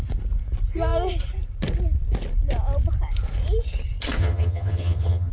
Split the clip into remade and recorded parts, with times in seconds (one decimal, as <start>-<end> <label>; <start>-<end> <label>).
0.0-4.2 recorded; 4.2-5.3 remade